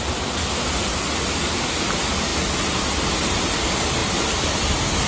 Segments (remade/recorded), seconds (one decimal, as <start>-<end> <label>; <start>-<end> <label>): 0.0-5.1 recorded